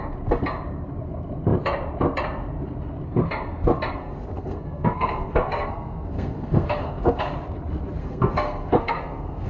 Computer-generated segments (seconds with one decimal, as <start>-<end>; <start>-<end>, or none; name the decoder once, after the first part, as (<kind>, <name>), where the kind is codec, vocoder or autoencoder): 4.0-7.2 (codec, SNAC); 8.0-9.5